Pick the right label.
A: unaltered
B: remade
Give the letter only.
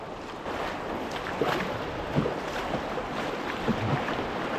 A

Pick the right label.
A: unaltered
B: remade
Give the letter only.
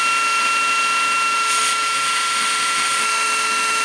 B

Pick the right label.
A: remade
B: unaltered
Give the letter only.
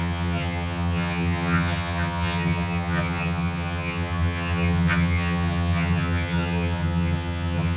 A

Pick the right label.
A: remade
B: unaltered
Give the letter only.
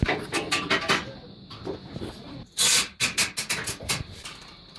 B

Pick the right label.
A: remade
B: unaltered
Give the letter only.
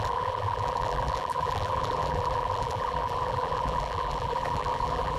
A